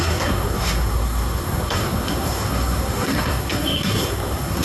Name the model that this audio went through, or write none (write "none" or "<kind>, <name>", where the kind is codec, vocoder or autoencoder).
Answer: codec, SNAC